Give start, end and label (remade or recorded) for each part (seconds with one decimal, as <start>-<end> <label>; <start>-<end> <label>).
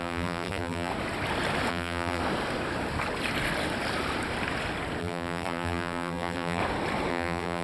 0.0-0.9 remade; 0.9-1.7 recorded; 1.7-2.2 remade; 2.2-5.0 recorded; 5.0-6.6 remade; 6.6-7.1 recorded; 7.1-7.6 remade